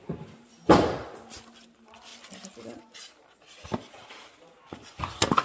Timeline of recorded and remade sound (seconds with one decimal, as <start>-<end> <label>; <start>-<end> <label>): 0.0-5.4 recorded